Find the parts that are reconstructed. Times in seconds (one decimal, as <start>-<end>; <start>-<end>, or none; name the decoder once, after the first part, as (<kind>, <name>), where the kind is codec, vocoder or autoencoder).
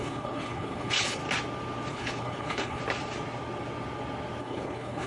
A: 0.0-1.2 (codec, HILCodec); 1.9-2.8; 4.4-5.1